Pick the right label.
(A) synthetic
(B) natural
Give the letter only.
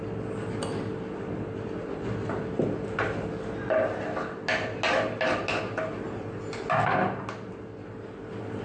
B